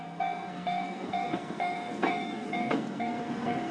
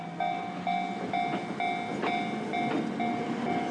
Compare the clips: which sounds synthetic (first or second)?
first